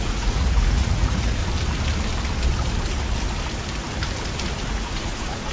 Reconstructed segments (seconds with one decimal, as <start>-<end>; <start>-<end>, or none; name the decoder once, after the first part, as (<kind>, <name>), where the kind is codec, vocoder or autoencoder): 0.0-1.4 (vocoder, Vocos); 4.7-5.5